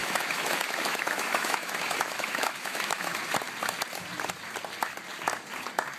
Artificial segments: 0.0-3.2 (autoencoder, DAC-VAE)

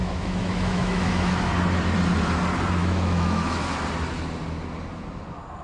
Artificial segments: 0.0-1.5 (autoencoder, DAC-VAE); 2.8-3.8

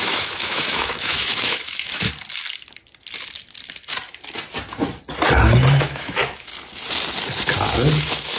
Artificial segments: 0.0-2.1 (autoencoder, DAC-VAE); 5.8-6.5; 8.0-8.4

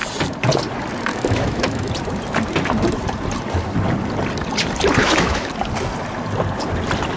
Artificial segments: 1.1-1.9 (autoencoder, DAC-VAE); 5.0-5.5

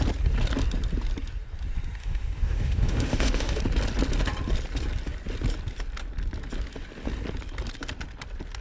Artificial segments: 2.0-3.6 (autoencoder, DAC-VAE)

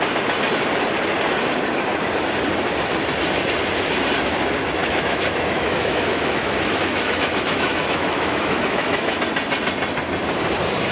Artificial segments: 4.8-9.1 (autoencoder, DAC-VAE)

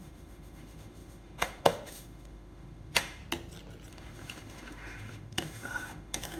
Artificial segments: 0.0-3.2 (autoencoder, DAC-VAE); 3.9-6.4